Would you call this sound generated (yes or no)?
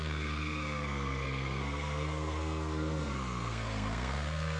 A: yes